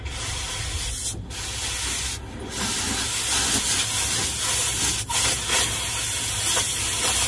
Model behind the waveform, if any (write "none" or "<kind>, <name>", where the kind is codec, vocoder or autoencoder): none